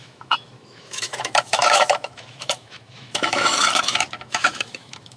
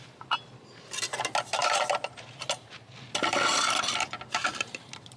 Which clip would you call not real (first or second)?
first